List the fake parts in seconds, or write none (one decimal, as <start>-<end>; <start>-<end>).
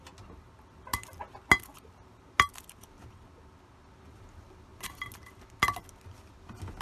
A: none